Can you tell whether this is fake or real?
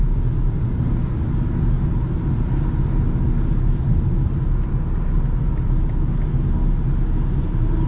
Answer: real